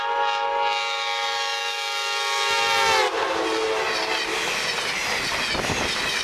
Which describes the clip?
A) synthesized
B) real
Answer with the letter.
B